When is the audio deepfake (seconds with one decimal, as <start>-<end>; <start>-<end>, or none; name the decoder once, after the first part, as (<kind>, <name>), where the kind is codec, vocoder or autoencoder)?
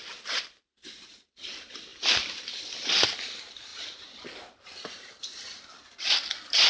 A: 1.9-2.6 (vocoder, BigVGAN v2); 3.7-4.3